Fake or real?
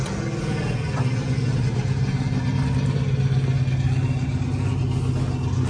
real